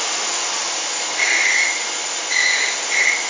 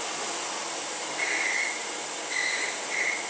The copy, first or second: second